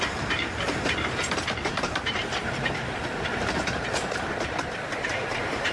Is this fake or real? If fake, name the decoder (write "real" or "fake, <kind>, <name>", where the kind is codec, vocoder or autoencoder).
fake, vocoder, BigVGAN v2